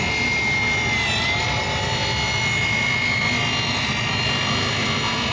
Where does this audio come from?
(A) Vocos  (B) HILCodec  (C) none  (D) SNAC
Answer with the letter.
C